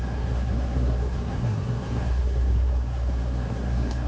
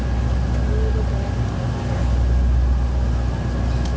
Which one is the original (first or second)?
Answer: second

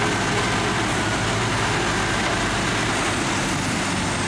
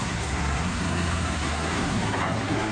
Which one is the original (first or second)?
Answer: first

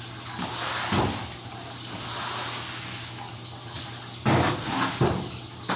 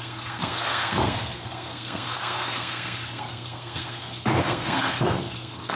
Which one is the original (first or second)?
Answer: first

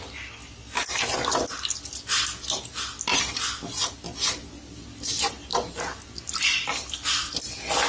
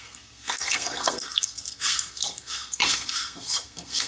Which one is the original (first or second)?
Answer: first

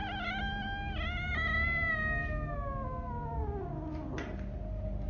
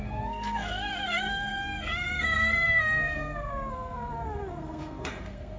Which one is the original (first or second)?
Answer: first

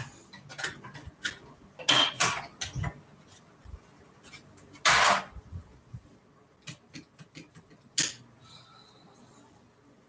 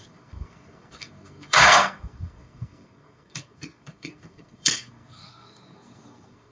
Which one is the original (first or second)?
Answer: first